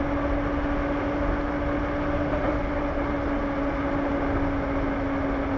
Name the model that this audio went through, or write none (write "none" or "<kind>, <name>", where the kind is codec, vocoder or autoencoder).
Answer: none